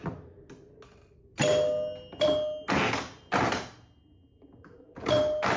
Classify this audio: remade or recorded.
recorded